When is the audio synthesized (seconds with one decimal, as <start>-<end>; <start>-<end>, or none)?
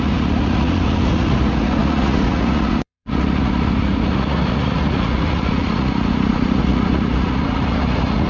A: 0.0-8.3